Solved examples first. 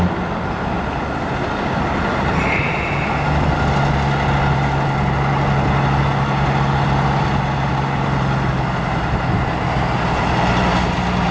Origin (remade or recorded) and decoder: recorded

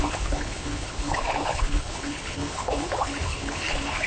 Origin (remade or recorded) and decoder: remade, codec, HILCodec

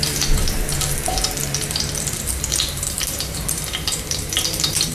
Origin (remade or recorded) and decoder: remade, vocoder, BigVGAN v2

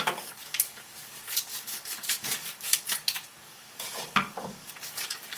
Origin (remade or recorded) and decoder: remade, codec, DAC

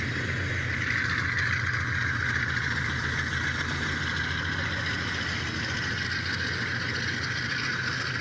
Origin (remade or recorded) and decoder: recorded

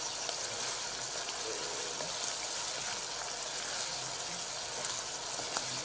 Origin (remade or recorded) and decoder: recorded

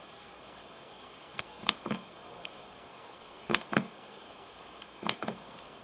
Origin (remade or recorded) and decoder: remade, codec, SNAC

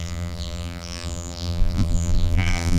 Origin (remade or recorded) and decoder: remade, vocoder, BigVGAN v2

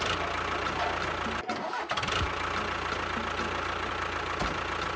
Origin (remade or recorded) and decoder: recorded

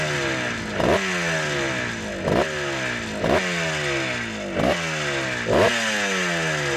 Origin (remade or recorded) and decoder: recorded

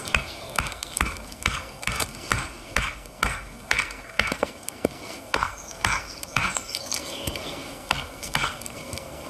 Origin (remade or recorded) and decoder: remade, codec, SNAC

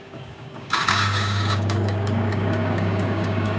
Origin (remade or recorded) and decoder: remade, codec, DAC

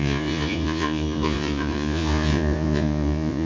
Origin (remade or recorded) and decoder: remade, vocoder, Vocos